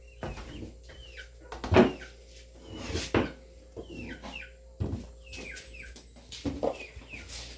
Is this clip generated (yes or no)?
no